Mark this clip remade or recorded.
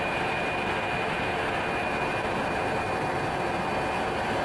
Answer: recorded